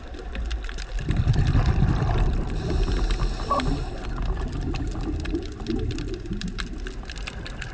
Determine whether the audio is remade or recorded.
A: recorded